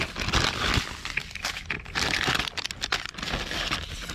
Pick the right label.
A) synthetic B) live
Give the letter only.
B